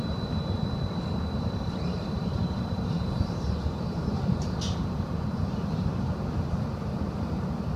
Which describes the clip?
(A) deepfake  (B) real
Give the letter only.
A